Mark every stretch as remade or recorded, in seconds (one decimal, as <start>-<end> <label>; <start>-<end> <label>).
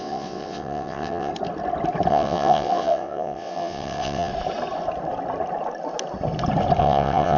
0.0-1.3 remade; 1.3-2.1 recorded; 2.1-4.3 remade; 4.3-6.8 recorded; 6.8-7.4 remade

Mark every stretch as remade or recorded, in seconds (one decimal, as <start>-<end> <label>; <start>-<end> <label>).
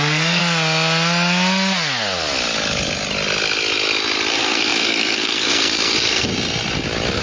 0.0-0.4 remade; 0.4-4.3 recorded; 4.3-6.3 remade; 6.3-7.2 recorded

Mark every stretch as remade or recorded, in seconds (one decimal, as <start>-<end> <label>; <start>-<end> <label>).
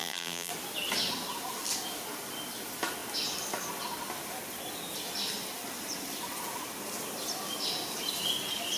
0.0-0.5 remade; 0.5-8.8 recorded